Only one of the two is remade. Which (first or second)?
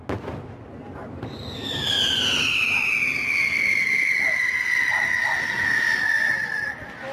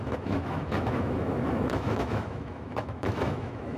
second